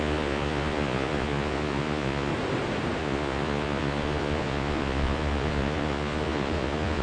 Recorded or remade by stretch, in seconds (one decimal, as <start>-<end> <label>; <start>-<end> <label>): 0.0-2.3 remade; 2.3-3.0 recorded; 3.0-7.0 remade